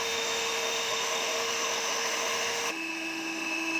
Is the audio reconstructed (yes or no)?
yes